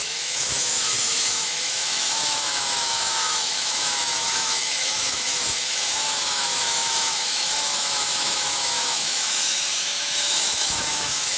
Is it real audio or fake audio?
fake